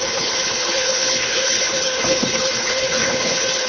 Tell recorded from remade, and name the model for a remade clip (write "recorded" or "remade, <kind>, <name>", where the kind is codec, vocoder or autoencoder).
remade, codec, HILCodec